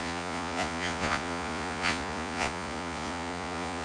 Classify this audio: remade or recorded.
remade